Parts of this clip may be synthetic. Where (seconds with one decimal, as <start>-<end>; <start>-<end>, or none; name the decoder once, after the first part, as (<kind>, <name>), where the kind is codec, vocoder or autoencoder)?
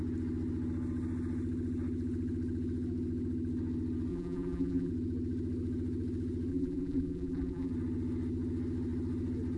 4.1-4.9 (vocoder, BigVGAN v2); 6.5-7.7